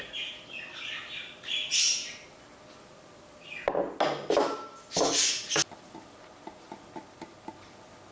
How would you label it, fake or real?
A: real